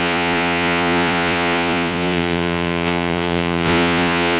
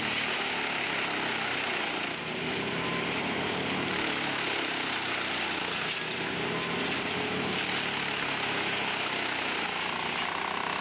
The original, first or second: second